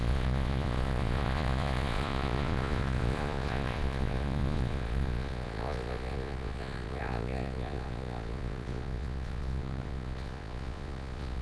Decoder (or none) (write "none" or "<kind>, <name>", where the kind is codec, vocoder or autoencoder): vocoder, Vocos